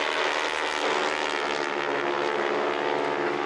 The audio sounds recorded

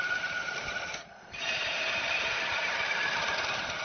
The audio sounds remade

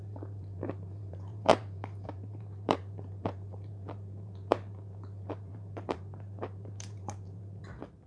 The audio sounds remade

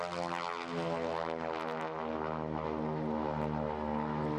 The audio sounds recorded